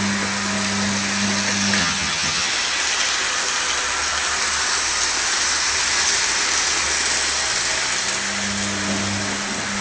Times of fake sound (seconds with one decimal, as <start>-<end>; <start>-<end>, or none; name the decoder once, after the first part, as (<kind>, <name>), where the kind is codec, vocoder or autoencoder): 1.8-2.5 (vocoder, HiFi-GAN)